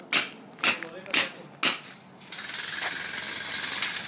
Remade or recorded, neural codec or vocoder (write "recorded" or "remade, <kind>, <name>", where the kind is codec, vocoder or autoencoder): recorded